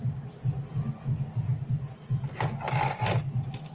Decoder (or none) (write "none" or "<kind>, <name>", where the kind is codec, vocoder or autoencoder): none